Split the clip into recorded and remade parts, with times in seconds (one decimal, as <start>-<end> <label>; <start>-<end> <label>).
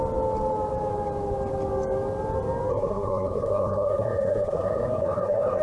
0.0-2.7 recorded; 2.7-5.6 remade